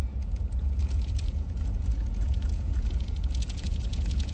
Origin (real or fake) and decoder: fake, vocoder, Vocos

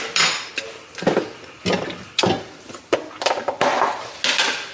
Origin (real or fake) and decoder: real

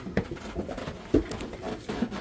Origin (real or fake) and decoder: real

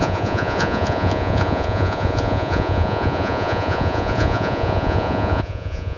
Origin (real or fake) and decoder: fake, vocoder, Vocos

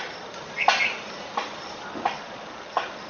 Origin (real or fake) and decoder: real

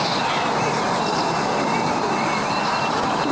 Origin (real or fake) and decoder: real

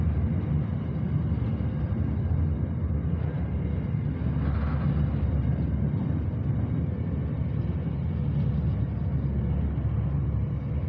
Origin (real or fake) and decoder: real